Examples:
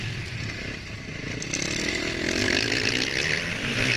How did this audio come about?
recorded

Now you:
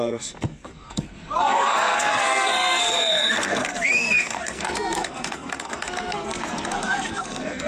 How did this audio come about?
remade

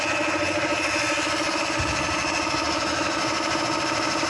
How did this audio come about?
recorded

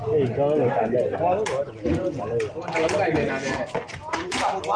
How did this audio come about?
recorded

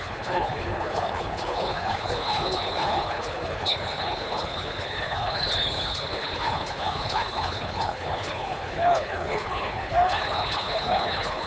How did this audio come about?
remade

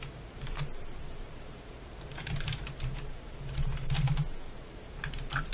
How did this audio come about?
remade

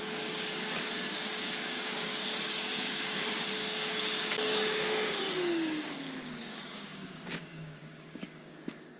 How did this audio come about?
remade